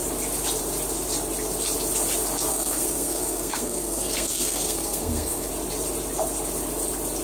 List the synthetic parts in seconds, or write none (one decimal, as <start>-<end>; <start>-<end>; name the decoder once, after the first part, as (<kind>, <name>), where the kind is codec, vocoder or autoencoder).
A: 2.5-5.5 (codec, SNAC)